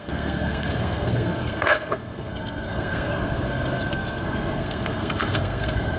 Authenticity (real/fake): fake